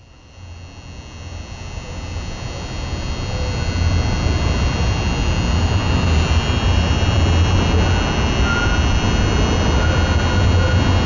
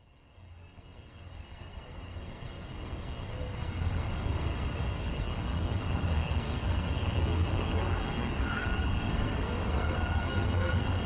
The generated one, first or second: second